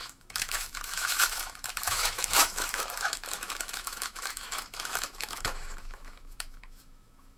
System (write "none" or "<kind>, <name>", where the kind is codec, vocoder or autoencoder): autoencoder, DAC-VAE